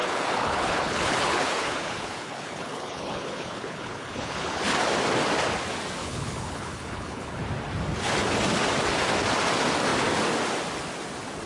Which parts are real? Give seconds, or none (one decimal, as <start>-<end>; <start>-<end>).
4.6-6.0; 7.4-11.5